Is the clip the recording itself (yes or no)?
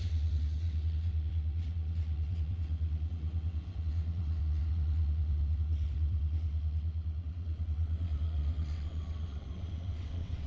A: no